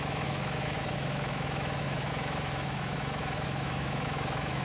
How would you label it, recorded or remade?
remade